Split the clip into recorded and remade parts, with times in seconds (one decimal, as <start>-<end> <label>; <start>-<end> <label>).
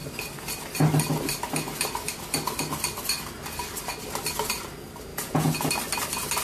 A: 0.0-5.1 recorded; 5.1-5.7 remade; 5.7-6.4 recorded